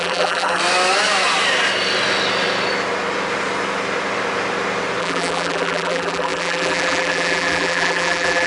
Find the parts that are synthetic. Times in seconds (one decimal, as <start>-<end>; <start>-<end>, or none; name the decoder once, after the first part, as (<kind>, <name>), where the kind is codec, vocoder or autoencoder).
0.0-0.6 (vocoder, BigVGAN v2); 5.0-8.5